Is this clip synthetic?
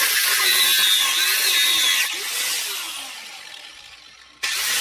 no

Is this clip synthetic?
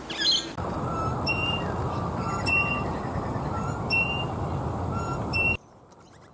no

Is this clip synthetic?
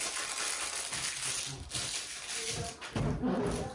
no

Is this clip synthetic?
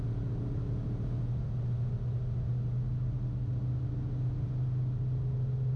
no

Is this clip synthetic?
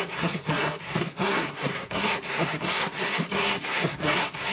yes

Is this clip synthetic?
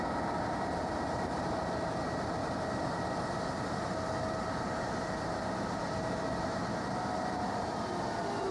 no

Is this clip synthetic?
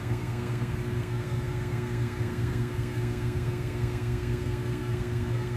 yes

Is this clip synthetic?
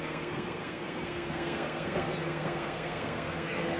yes